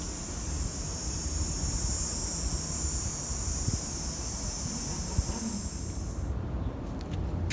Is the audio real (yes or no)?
yes